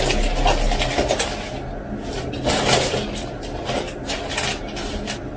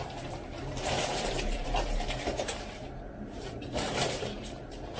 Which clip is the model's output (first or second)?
second